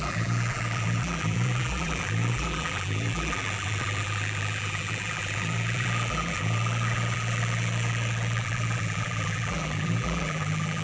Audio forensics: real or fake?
fake